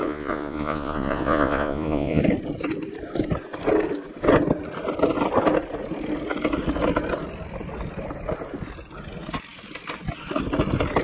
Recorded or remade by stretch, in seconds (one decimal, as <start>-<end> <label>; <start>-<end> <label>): 0.0-2.2 remade; 2.2-11.0 recorded